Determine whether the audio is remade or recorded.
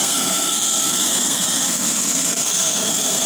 remade